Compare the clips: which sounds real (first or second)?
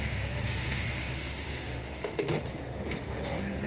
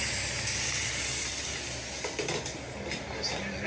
second